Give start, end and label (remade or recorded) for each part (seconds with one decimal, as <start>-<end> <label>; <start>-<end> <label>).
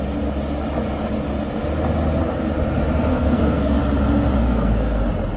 0.0-3.1 recorded; 3.1-3.8 remade; 3.8-4.4 recorded; 4.4-5.0 remade; 5.0-5.4 recorded